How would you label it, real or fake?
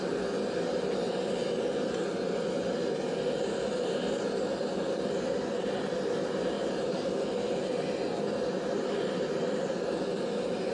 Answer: real